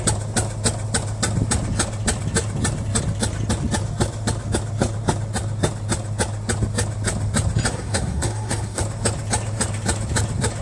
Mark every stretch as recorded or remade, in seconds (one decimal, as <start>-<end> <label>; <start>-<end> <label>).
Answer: 0.0-7.7 recorded; 7.7-8.8 remade; 8.8-10.6 recorded

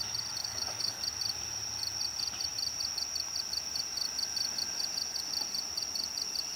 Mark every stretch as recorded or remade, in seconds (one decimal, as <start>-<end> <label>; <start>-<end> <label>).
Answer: 0.0-0.4 recorded; 0.4-1.0 remade; 1.0-6.6 recorded

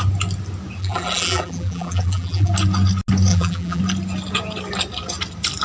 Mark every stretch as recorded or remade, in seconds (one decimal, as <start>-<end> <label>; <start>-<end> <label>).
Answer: 0.0-0.8 recorded; 0.8-2.5 remade; 2.5-3.3 recorded; 3.3-3.8 remade; 3.8-5.6 recorded